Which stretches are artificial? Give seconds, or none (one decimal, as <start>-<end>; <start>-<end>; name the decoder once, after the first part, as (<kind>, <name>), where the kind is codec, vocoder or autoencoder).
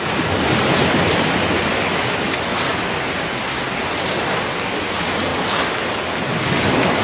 none